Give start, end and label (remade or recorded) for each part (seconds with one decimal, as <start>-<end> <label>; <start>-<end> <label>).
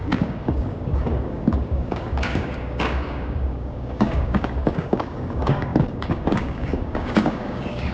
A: 0.0-7.9 remade